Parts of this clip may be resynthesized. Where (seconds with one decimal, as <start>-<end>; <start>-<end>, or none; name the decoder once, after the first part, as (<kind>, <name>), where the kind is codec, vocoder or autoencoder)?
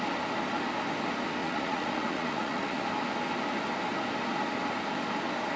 1.4-2.8 (vocoder, Vocos)